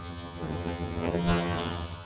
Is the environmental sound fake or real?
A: fake